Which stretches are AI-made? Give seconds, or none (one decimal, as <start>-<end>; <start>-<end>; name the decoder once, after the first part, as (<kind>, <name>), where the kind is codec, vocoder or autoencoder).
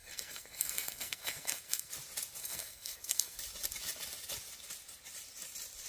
0.0-1.9 (codec, SNAC); 2.4-3.4